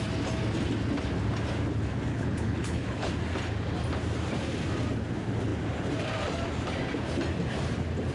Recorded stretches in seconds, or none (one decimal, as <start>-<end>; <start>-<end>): 0.0-2.1; 3.1-8.1